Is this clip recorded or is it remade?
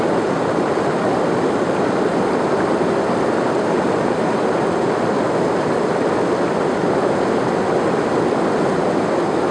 recorded